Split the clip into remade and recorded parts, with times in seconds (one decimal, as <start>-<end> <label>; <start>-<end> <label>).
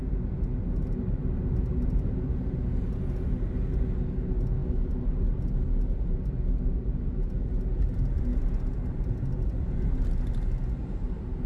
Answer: 0.0-11.5 recorded